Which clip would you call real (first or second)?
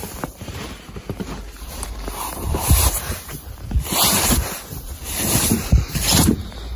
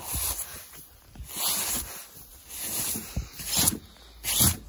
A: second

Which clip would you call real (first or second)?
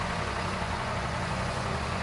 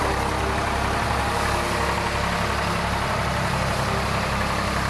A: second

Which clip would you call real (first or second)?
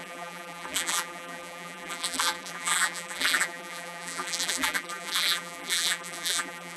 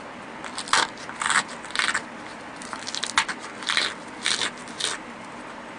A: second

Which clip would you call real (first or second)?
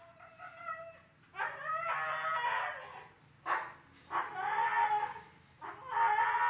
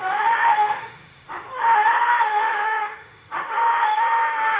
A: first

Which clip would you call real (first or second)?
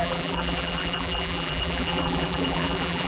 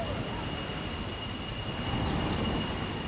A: second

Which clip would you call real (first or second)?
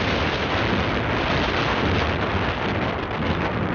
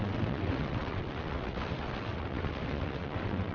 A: first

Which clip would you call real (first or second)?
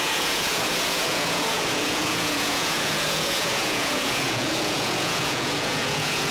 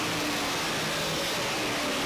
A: second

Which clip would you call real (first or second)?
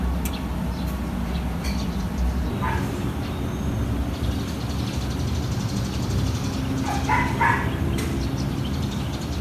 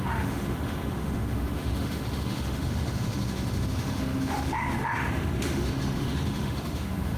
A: first